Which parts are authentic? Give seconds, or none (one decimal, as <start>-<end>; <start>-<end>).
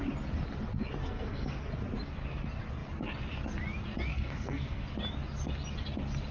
0.0-1.0; 1.6-4.1; 4.9-6.3